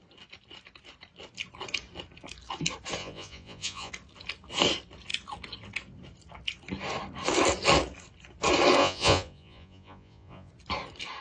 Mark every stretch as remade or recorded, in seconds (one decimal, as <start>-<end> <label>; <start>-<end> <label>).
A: 0.0-3.0 recorded; 3.0-3.9 remade; 3.9-8.8 recorded; 8.8-10.5 remade; 10.5-11.2 recorded

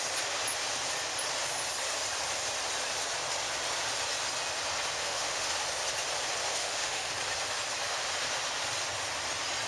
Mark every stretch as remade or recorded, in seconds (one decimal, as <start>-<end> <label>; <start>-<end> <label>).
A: 0.0-5.0 recorded; 5.0-5.5 remade; 5.5-6.6 recorded; 6.6-7.1 remade; 7.1-9.7 recorded